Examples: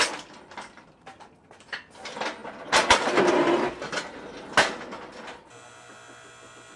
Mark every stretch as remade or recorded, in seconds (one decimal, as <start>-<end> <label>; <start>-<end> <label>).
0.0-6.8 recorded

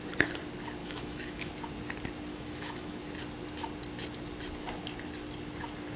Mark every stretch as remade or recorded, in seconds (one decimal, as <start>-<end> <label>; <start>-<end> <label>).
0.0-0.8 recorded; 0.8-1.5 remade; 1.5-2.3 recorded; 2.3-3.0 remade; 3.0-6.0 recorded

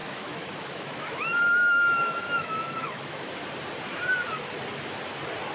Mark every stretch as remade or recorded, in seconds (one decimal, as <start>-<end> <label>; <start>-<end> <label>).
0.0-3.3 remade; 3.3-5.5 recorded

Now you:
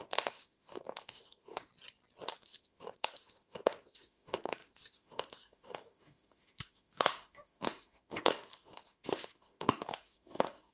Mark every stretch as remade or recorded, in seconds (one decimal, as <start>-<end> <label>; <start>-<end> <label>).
0.0-1.7 remade; 1.7-2.3 recorded; 2.3-10.7 remade

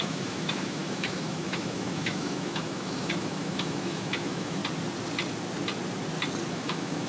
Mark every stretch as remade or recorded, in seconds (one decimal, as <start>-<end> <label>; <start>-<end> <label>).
0.0-4.6 remade; 4.6-6.5 recorded; 6.5-7.1 remade

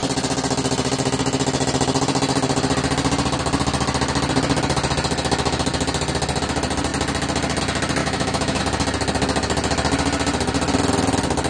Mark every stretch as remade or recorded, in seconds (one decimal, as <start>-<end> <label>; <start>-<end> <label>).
0.0-8.0 recorded; 8.0-8.6 remade; 8.6-11.5 recorded